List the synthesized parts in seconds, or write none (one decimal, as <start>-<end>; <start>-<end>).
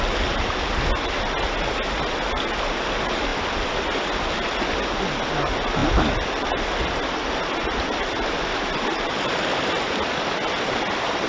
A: none